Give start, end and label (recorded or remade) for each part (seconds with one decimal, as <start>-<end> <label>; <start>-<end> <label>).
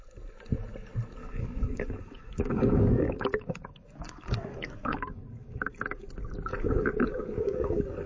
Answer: 0.0-1.2 recorded; 1.2-6.1 remade; 6.1-6.5 recorded; 6.5-8.1 remade